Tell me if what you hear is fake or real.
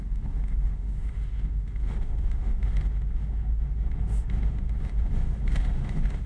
fake